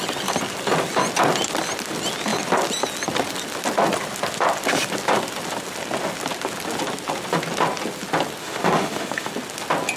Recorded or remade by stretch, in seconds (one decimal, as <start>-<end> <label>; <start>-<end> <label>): 0.0-8.4 recorded; 8.4-9.3 remade; 9.3-10.0 recorded